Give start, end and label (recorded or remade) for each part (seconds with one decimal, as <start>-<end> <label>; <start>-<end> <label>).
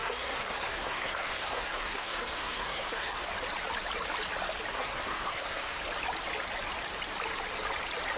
0.0-3.2 remade; 3.2-4.7 recorded; 4.7-5.8 remade; 5.8-8.2 recorded